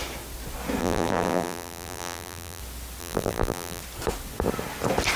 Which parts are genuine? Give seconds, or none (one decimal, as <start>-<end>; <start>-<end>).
0.0-0.8; 2.6-3.0; 3.8-5.2

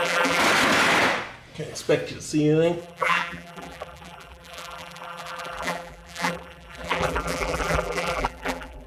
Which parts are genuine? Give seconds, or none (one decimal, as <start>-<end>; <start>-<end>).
0.4-2.8

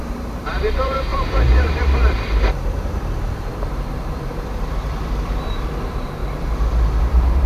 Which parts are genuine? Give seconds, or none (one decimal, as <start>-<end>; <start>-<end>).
6.2-7.0

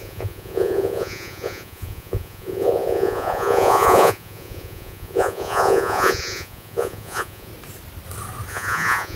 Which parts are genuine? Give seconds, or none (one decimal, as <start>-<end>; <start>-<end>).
7.5-8.5